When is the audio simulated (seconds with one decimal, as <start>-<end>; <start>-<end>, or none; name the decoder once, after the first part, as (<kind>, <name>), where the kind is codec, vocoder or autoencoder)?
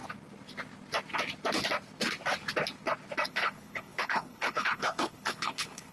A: 3.3-5.9 (codec, HILCodec)